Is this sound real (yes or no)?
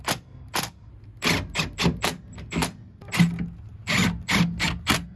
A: yes